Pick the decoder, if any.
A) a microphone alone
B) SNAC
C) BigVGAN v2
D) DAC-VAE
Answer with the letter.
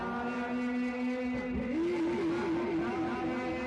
A